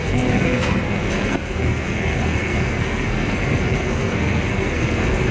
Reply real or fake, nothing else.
fake